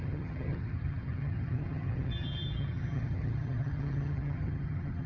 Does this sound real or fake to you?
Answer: fake